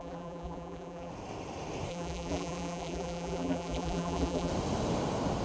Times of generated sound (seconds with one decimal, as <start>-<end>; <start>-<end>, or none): 0.0-1.1; 1.9-4.5